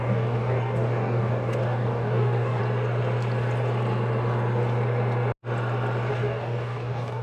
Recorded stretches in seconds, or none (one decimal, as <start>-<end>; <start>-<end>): 2.6-6.1